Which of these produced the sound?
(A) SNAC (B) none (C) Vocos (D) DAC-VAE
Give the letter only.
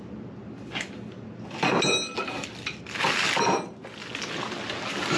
B